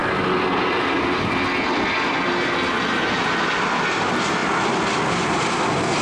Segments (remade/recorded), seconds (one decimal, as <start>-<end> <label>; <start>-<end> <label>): 0.0-6.0 recorded